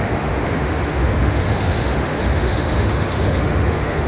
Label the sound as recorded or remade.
remade